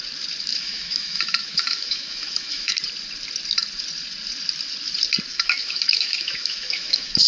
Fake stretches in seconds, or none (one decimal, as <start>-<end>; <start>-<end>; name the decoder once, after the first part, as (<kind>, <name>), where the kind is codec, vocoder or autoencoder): 0.5-2.8 (autoencoder, DAC-VAE); 5.3-7.3